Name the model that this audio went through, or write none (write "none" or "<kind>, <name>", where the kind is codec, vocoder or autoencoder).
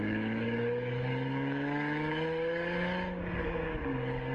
codec, DAC